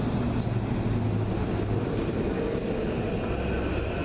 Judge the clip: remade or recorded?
recorded